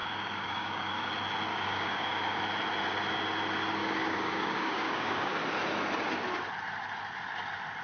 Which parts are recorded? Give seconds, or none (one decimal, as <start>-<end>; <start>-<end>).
1.1-1.5; 2.4-3.8; 5.3-7.8